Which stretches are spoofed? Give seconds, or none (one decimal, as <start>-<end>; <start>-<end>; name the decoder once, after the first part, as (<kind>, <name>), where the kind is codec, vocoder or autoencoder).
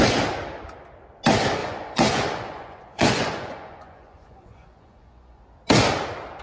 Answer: 1.6-5.4 (vocoder, Vocos)